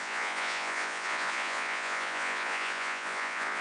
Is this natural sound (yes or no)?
no